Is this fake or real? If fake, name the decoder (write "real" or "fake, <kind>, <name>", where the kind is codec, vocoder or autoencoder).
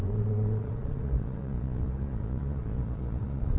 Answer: fake, vocoder, Vocos